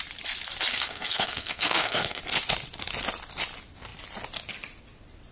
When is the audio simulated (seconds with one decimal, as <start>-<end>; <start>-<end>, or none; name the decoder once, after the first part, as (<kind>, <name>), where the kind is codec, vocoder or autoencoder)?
0.7-2.2 (codec, SNAC)